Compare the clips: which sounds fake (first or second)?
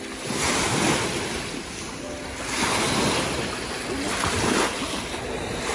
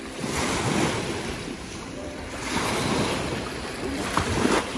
second